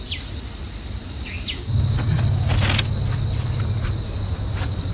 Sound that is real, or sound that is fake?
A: real